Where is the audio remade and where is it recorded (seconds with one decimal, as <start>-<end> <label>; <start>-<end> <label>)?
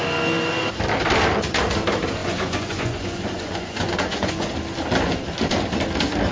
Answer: 0.0-2.2 recorded; 2.2-4.5 remade; 4.5-6.3 recorded